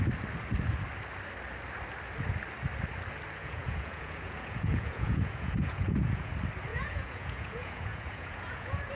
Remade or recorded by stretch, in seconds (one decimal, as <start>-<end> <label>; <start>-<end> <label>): 0.0-3.4 recorded; 3.4-6.3 remade; 6.3-6.7 recorded; 6.7-8.9 remade

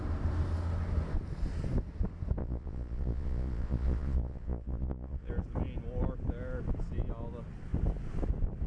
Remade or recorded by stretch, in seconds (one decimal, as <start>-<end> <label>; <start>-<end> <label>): 0.0-2.4 recorded; 2.4-5.3 remade; 5.3-8.7 recorded

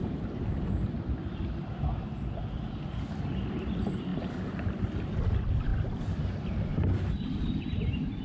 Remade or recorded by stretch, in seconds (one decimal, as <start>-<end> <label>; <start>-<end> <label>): 0.0-5.7 recorded; 5.7-6.2 remade; 6.2-8.2 recorded

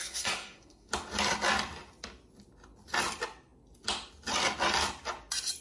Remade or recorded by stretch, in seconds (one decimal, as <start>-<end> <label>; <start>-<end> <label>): 0.0-0.9 remade; 0.9-5.6 recorded

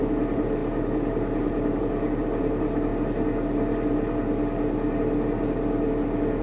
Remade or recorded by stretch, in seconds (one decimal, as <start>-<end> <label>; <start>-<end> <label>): 0.0-2.9 remade; 2.9-6.4 recorded